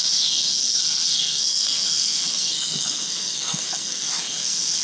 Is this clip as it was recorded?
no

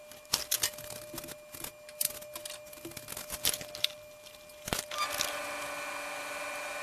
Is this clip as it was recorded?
yes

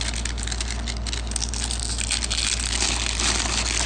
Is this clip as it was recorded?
yes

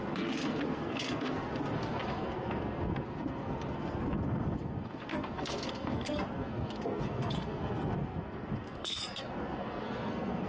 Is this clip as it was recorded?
no